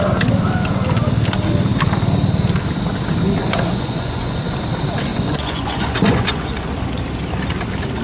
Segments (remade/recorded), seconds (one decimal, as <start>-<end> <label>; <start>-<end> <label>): 0.0-3.4 recorded; 3.4-4.4 remade; 4.4-5.1 recorded; 5.1-6.5 remade; 6.5-8.0 recorded